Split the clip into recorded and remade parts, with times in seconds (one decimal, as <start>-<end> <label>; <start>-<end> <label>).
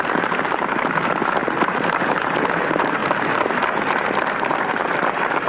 0.0-3.0 remade; 3.0-4.7 recorded; 4.7-5.5 remade